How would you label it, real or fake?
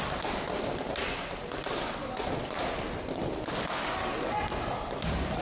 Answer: real